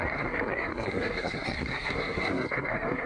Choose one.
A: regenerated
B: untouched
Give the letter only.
A